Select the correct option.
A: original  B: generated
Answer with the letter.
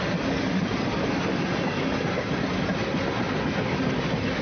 A